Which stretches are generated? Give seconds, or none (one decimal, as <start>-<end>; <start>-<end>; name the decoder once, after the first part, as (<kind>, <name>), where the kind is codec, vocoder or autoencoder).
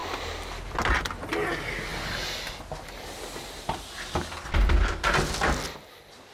none